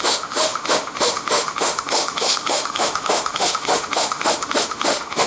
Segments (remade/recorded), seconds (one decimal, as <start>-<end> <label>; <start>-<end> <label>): 0.0-5.3 remade